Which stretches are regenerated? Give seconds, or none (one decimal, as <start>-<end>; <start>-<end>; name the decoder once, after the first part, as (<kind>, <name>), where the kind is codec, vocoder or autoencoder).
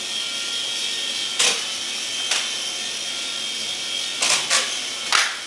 none